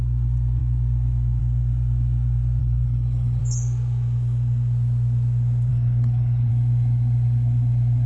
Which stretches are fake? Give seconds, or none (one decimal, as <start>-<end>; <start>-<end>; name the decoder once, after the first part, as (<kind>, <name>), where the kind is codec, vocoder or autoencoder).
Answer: 2.6-3.4 (codec, HILCodec); 5.7-6.5